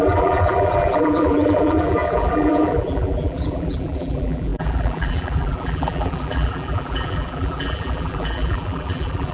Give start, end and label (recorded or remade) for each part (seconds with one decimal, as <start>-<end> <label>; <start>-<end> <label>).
0.0-9.3 remade